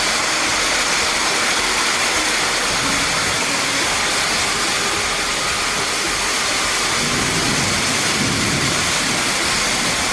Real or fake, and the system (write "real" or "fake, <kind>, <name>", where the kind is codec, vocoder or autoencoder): real